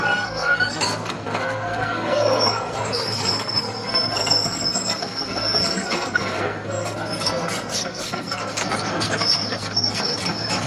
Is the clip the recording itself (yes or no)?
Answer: no